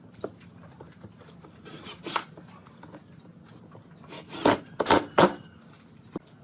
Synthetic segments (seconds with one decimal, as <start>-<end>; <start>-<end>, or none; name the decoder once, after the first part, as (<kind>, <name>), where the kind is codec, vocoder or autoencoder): none